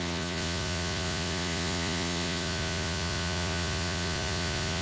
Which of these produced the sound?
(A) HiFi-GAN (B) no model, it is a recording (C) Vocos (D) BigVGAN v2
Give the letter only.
C